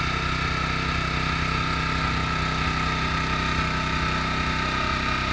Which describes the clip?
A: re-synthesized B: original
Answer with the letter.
B